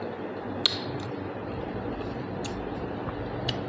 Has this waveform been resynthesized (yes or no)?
no